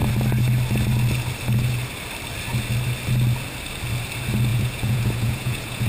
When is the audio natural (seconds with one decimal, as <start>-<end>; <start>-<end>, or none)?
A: 0.0-4.5

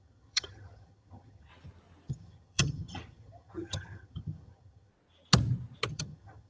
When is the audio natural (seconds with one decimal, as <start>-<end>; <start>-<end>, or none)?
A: 1.5-2.1; 4.9-5.9